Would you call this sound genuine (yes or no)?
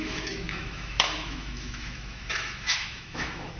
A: no